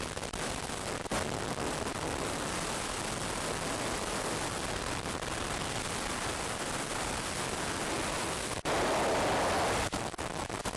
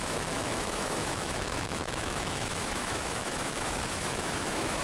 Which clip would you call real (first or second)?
first